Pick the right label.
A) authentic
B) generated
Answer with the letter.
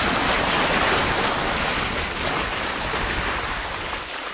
A